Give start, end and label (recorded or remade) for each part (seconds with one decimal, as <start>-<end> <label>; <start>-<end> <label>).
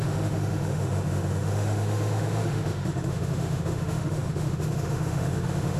0.0-5.8 remade